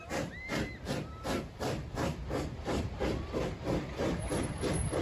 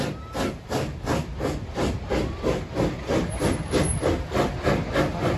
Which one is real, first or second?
second